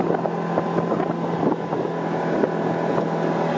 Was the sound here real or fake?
real